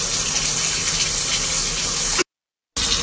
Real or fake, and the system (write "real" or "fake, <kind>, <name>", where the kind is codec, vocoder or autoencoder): real